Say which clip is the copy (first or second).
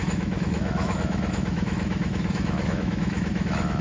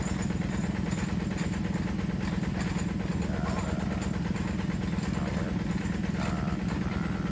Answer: first